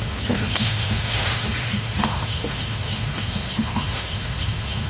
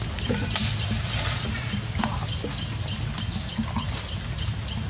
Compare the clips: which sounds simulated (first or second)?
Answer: first